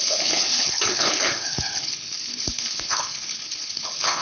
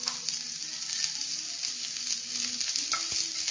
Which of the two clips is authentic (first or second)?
second